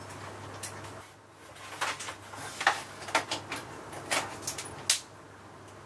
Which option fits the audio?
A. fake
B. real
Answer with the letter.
B